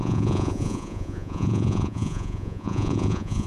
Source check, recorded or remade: remade